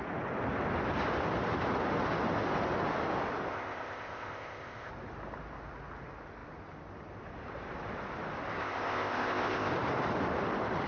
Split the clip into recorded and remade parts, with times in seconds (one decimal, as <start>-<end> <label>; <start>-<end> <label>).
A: 0.0-3.5 recorded; 3.5-4.9 remade; 4.9-8.6 recorded; 8.6-9.7 remade; 9.7-10.9 recorded